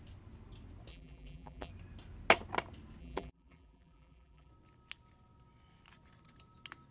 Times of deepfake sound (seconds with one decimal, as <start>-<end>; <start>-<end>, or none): 0.9-1.7; 3.0-4.5